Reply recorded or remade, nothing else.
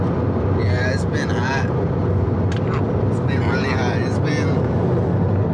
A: recorded